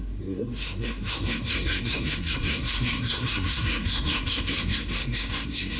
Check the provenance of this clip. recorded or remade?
remade